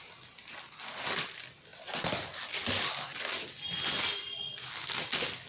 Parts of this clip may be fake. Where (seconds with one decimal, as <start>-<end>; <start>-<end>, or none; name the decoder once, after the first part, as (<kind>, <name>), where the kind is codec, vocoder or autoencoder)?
none

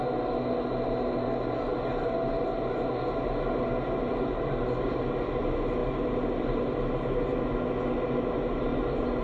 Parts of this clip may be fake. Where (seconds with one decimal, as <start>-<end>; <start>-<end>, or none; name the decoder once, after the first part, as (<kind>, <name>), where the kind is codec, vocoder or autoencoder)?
none

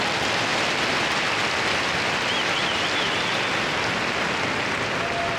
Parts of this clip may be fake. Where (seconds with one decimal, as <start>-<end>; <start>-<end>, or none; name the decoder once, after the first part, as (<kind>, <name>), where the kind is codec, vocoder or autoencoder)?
none